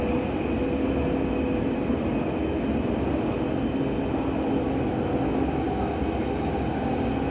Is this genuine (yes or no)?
yes